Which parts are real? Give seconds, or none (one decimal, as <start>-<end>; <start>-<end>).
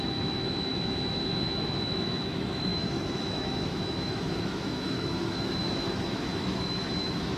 none